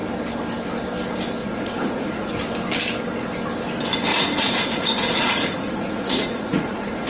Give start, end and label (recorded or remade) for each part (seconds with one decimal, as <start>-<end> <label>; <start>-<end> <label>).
0.0-1.4 recorded; 1.4-2.3 remade; 2.3-4.1 recorded; 4.1-7.1 remade